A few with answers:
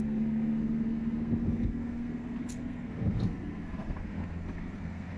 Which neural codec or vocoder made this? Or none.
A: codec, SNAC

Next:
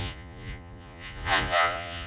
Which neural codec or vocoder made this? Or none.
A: vocoder, Vocos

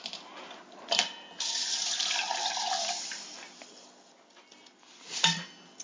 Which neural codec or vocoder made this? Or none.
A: none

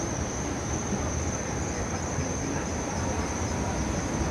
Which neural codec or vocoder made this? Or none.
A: vocoder, BigVGAN v2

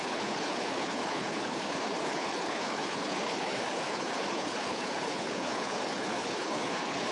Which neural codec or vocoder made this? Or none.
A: codec, HILCodec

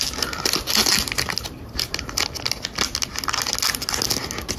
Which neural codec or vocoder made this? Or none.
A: none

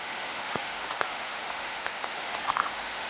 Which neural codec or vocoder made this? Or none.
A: autoencoder, DAC-VAE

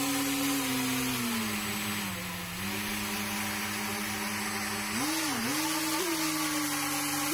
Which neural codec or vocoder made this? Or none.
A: none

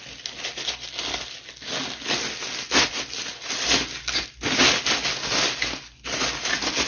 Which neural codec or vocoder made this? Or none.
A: none